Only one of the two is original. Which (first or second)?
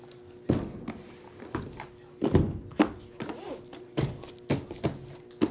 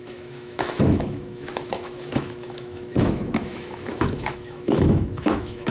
first